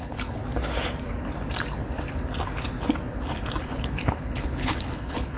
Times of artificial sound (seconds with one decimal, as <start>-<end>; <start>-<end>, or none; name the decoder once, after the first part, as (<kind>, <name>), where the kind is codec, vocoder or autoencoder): 0.0-0.4 (codec, HILCodec); 3.6-5.4